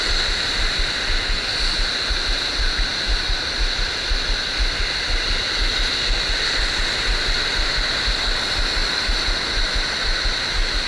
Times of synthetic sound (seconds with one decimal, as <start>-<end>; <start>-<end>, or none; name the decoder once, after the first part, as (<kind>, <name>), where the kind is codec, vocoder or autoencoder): 2.9-6.6 (vocoder, BigVGAN v2); 8.8-9.6